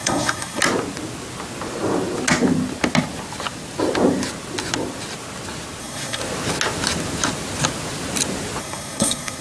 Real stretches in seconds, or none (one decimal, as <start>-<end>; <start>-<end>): 0.6-5.8; 6.2-8.6